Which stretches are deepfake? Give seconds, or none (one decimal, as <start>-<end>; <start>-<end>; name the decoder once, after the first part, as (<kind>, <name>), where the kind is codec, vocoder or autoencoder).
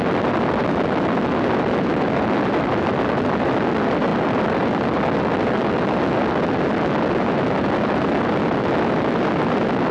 none